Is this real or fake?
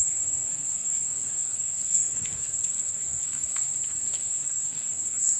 fake